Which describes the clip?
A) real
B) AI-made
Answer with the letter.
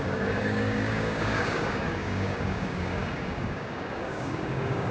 B